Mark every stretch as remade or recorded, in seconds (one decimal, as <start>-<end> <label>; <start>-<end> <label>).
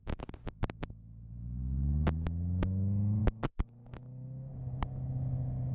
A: 0.0-5.7 recorded